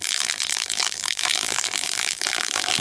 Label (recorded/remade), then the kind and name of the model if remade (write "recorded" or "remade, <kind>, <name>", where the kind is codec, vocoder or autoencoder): remade, vocoder, BigVGAN v2